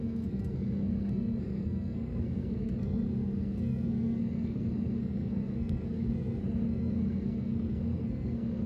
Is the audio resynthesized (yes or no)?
yes